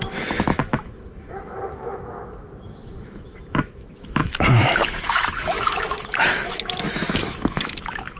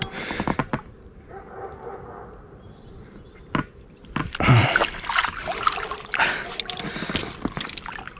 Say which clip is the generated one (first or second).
first